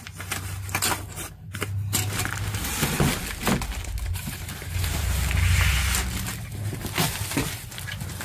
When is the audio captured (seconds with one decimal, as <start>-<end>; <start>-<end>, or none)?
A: 0.0-4.1; 5.1-8.2